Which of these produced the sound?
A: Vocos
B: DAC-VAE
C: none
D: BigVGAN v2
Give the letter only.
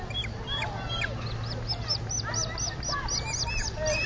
C